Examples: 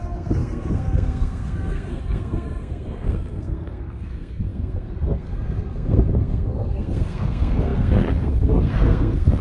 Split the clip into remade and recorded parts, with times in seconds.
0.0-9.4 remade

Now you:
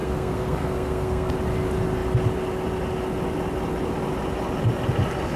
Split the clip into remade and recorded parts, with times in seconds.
0.0-1.3 remade; 1.3-5.4 recorded

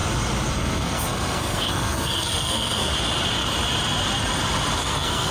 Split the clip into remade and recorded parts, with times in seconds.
0.0-0.5 recorded; 0.5-2.9 remade; 2.9-4.8 recorded; 4.8-5.3 remade

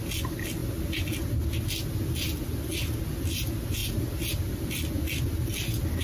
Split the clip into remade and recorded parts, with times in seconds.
0.0-6.0 recorded

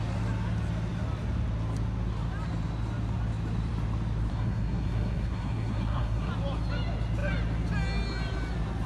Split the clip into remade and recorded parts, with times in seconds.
0.0-4.3 recorded; 4.3-6.3 remade; 6.3-8.9 recorded

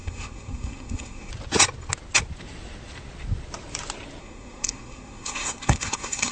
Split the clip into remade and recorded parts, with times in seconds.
0.0-1.3 remade; 1.3-4.2 recorded; 4.2-6.3 remade